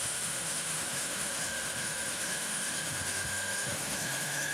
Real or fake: fake